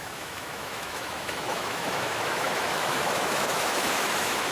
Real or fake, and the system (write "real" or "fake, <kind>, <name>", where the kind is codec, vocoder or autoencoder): fake, autoencoder, DAC-VAE